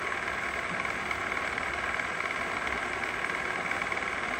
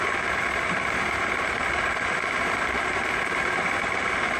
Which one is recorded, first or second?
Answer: first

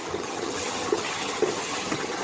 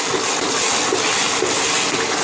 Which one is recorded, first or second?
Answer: second